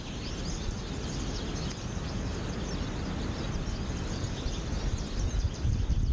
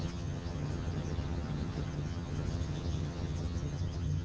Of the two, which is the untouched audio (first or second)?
first